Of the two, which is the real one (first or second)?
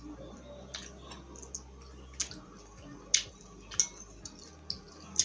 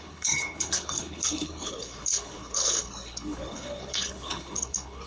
first